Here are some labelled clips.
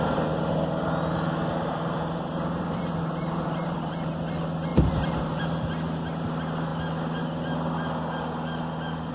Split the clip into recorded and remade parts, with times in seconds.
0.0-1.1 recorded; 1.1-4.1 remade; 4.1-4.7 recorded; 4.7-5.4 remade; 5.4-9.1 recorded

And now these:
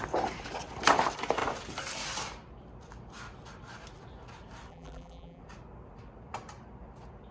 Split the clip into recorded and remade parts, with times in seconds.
0.0-4.7 recorded; 4.7-5.4 remade; 5.4-7.3 recorded